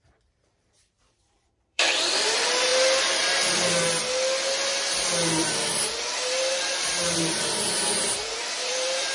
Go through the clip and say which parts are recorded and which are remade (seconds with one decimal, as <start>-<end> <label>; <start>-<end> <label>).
0.0-2.7 remade; 2.7-5.5 recorded; 5.5-9.1 remade